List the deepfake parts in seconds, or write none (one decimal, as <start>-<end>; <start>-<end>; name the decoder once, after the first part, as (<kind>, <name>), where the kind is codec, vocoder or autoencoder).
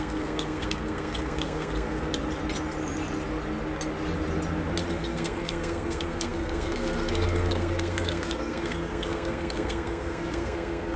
0.0-2.1 (codec, SNAC); 4.9-11.0